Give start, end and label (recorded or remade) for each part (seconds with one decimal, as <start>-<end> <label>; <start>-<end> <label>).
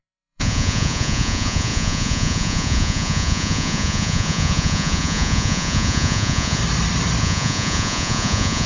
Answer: 0.0-6.6 remade; 6.6-7.2 recorded; 7.2-8.7 remade